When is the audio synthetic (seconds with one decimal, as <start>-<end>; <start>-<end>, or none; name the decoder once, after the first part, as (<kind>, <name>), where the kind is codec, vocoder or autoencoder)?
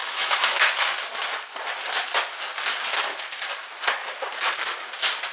0.0-0.7 (autoencoder, DAC-VAE)